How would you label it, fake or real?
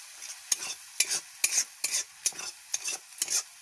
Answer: real